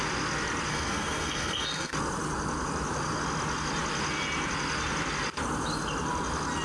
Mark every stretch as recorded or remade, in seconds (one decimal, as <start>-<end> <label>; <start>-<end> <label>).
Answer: 0.0-0.7 recorded; 0.7-1.9 remade; 1.9-6.6 recorded